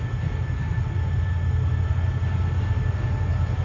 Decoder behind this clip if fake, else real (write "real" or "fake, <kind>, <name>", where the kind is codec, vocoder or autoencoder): real